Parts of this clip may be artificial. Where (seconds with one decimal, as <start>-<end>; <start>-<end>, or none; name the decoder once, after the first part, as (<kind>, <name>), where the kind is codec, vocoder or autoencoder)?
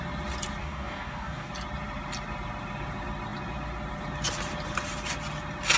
0.6-1.5 (codec, DAC)